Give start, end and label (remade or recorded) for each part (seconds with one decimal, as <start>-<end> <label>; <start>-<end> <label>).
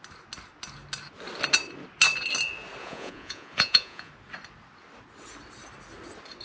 0.0-2.8 recorded; 2.8-4.1 remade; 4.1-6.4 recorded